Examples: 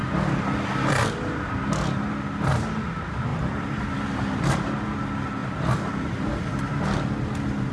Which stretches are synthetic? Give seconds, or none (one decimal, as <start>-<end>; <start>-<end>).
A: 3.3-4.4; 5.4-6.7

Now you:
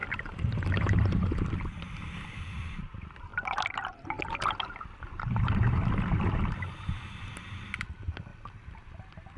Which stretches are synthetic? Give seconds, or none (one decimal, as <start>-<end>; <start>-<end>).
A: 0.6-3.3; 6.9-9.4

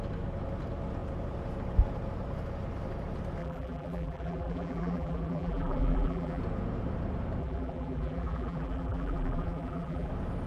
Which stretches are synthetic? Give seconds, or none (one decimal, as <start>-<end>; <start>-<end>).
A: 3.4-6.4; 7.4-10.1

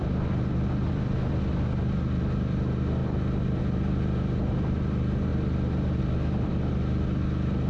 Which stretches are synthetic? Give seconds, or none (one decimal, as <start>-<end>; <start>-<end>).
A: none

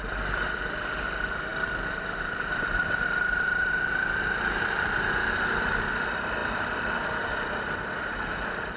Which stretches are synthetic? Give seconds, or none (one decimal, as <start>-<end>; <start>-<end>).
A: 0.0-8.8

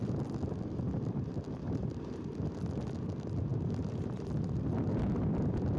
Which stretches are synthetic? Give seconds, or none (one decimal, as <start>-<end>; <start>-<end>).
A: 1.6-2.2; 3.5-4.7

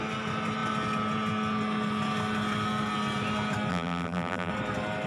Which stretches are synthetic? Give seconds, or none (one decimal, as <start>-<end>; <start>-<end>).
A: 3.7-4.5

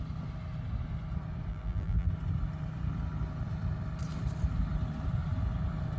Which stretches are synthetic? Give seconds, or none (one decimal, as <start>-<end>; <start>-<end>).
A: 1.5-2.1